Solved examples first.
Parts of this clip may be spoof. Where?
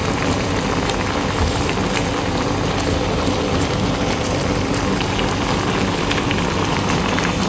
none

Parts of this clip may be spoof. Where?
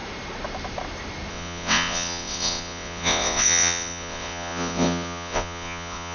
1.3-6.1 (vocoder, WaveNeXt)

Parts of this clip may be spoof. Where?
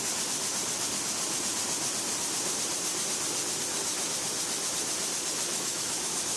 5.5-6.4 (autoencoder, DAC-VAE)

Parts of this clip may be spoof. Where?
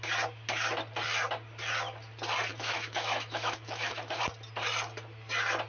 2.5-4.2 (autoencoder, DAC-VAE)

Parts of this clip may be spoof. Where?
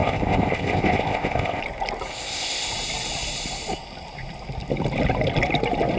0.0-1.6 (codec, ZipCodec); 2.1-2.7